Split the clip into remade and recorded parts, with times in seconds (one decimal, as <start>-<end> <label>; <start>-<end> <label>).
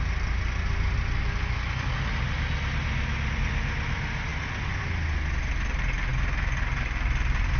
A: 0.0-7.6 recorded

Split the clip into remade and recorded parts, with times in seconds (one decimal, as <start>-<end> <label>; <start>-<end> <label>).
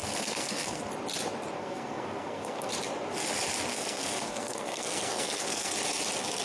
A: 0.0-0.8 remade; 0.8-1.6 recorded; 1.6-2.7 remade; 2.7-3.7 recorded; 3.7-5.7 remade; 5.7-6.4 recorded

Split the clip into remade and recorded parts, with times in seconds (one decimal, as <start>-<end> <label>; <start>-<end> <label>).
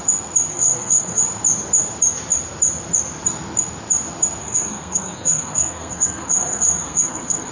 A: 0.0-0.5 recorded; 0.5-1.2 remade; 1.2-4.4 recorded; 4.4-7.5 remade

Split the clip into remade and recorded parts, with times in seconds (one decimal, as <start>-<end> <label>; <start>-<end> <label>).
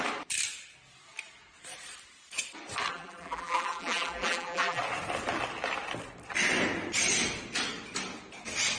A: 0.0-2.9 recorded; 2.9-4.8 remade; 4.8-8.8 recorded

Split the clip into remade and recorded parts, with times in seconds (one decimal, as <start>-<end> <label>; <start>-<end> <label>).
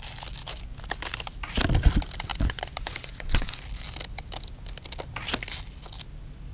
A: 0.0-2.3 recorded; 2.3-3.6 remade; 3.6-6.5 recorded